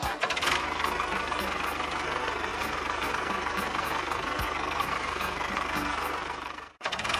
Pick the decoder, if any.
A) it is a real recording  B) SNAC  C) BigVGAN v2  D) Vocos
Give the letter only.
B